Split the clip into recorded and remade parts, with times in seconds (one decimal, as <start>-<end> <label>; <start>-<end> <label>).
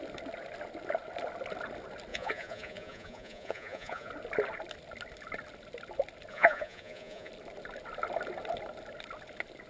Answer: 0.0-2.1 recorded; 2.1-4.1 remade; 4.1-6.3 recorded; 6.3-7.3 remade; 7.3-9.7 recorded